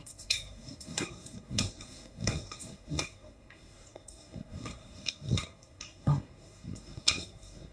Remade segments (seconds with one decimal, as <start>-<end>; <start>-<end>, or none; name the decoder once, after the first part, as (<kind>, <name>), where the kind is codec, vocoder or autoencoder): 0.0-7.7 (codec, SNAC)